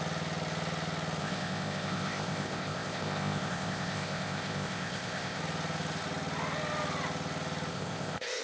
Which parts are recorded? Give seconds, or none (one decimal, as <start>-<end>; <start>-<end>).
0.0-1.2; 5.4-7.7